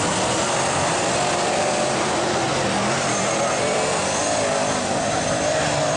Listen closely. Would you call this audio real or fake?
fake